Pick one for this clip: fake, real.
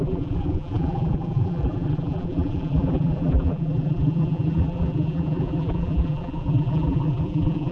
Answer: fake